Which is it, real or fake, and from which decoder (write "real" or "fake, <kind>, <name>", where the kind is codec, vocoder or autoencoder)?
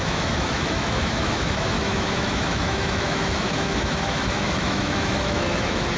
fake, autoencoder, DAC-VAE